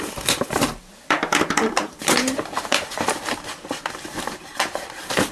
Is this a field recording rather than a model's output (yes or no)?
no